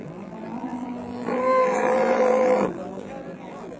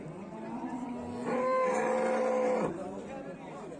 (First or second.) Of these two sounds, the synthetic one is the first